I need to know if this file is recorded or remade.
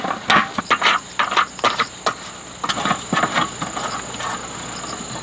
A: recorded